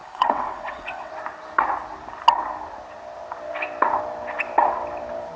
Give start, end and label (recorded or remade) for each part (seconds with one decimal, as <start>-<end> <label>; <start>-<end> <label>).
0.0-1.1 remade; 1.1-5.4 recorded